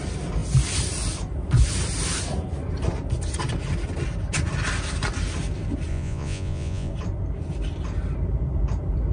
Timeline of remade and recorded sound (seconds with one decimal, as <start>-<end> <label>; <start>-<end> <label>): 0.0-5.9 recorded; 5.9-6.9 remade; 6.9-9.1 recorded